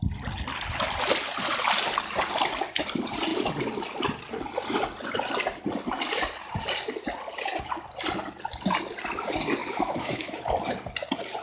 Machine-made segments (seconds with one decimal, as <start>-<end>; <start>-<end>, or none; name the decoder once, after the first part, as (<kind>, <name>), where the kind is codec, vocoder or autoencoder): 9.6-10.5 (autoencoder, DAC-VAE)